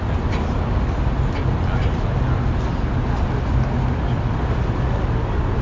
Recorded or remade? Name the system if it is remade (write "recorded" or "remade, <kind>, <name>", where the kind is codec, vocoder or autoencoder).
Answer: recorded